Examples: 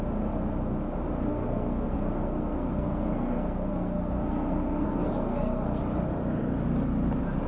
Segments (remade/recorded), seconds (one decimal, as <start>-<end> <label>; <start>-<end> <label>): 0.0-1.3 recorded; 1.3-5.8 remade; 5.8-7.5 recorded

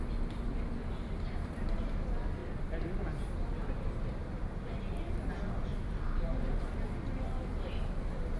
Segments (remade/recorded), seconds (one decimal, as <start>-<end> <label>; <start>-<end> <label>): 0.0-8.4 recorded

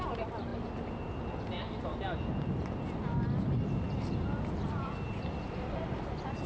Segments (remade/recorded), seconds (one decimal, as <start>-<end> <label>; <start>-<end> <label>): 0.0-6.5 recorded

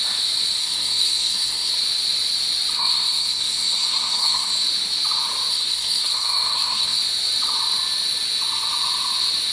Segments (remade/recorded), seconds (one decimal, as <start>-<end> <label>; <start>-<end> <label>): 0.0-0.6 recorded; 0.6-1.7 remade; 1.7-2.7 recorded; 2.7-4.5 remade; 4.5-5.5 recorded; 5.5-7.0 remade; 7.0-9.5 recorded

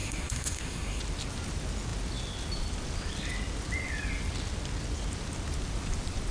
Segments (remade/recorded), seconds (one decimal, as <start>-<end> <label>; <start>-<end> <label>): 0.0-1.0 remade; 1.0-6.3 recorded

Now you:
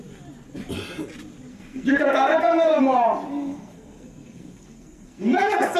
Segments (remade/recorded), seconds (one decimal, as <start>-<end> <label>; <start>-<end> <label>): 0.0-1.5 recorded; 1.5-2.8 remade; 2.8-3.3 recorded; 3.3-5.8 remade

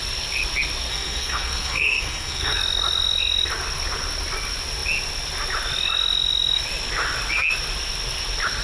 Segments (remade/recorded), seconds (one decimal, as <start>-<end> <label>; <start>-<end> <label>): 0.0-0.9 recorded; 0.9-2.6 remade; 2.6-8.6 recorded

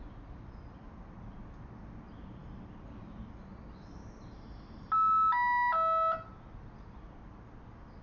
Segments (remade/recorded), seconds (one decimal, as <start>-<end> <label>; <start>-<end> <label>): 0.0-8.0 recorded